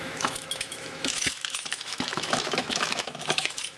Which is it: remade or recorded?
remade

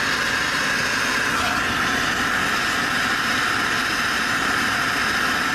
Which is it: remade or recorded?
recorded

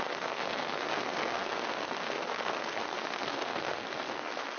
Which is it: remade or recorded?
remade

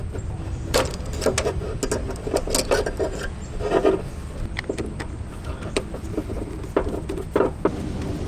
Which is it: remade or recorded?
recorded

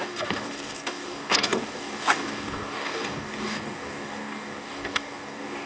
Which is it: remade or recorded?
remade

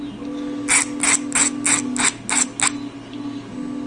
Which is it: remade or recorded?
recorded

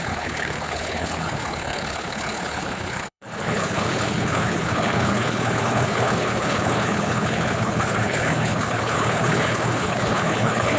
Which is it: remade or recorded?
remade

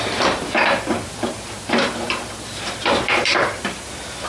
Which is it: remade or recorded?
remade